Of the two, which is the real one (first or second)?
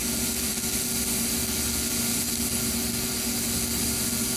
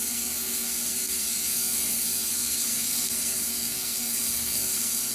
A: first